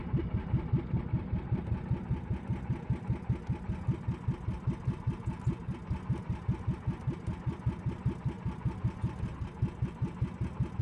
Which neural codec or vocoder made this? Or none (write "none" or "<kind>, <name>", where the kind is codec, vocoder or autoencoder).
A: none